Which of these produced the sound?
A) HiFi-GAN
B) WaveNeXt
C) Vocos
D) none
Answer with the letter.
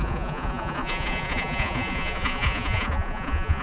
C